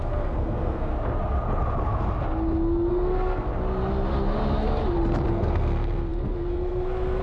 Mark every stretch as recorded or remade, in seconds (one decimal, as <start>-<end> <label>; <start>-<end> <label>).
0.0-0.9 remade; 0.9-2.9 recorded; 2.9-3.5 remade; 3.5-5.3 recorded; 5.3-7.2 remade